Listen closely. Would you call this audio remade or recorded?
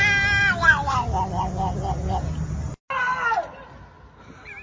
recorded